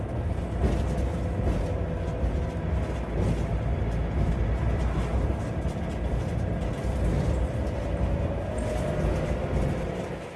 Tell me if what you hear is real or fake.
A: real